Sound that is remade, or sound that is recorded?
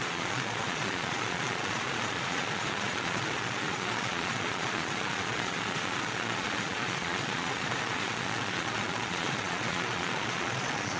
remade